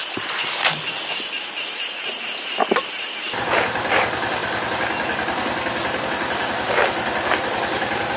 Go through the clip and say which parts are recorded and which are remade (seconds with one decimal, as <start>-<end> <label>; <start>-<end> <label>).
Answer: 0.0-8.2 recorded